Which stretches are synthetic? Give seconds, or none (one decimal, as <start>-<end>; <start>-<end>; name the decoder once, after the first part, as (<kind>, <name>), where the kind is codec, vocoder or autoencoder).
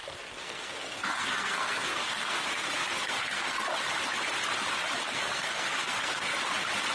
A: 0.0-3.7 (codec, SNAC); 5.0-6.3